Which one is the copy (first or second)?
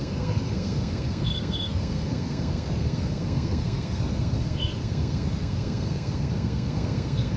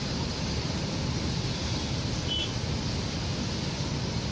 first